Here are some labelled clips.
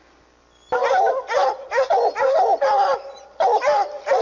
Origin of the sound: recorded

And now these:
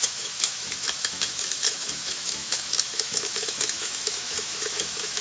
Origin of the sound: remade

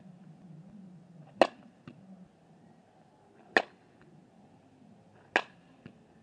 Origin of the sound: recorded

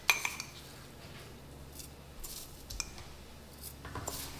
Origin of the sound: recorded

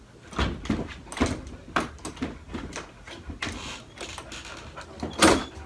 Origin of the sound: recorded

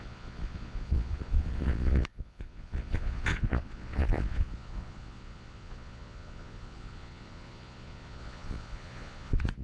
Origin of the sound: remade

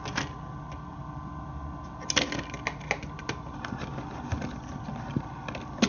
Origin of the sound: recorded